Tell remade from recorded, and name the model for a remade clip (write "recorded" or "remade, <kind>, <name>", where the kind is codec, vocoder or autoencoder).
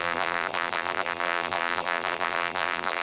remade, vocoder, BigVGAN v2